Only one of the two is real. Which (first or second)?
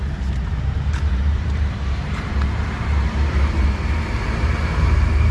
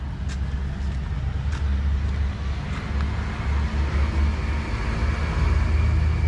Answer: second